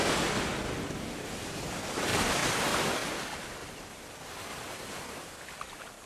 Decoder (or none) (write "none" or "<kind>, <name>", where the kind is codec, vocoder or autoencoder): none